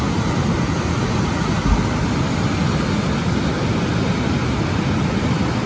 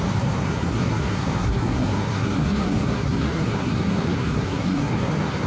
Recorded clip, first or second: first